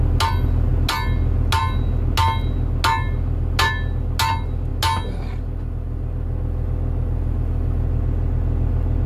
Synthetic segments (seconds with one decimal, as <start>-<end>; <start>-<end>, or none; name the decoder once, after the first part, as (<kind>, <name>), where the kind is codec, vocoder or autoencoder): none